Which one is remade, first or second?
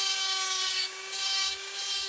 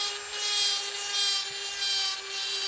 first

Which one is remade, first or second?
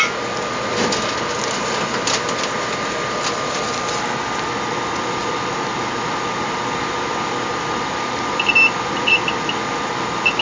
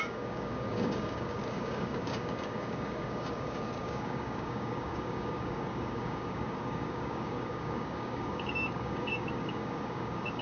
second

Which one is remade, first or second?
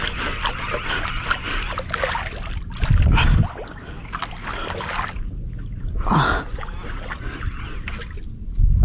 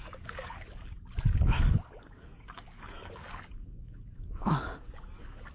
second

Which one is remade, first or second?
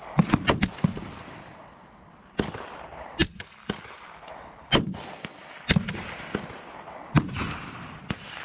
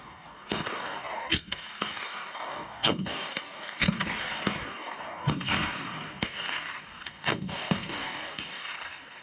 second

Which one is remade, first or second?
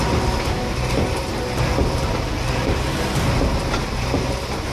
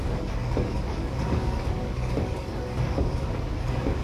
second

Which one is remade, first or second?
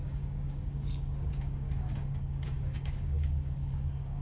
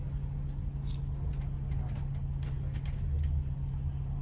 first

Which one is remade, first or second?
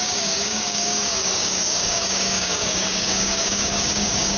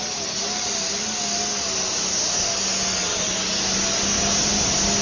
first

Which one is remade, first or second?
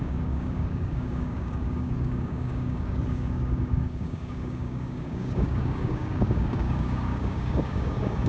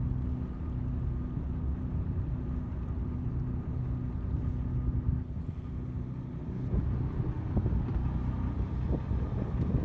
first